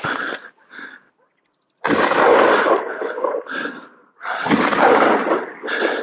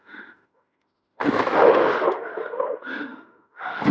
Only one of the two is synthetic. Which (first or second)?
second